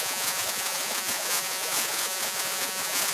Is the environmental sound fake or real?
fake